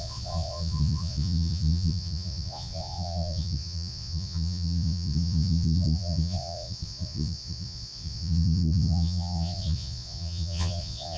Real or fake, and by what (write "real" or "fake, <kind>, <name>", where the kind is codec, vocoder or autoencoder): fake, vocoder, Vocos